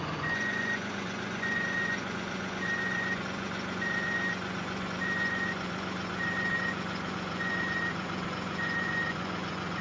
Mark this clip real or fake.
fake